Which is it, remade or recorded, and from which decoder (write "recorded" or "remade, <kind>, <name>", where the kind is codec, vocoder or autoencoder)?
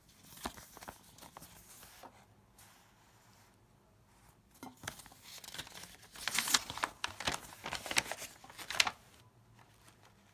recorded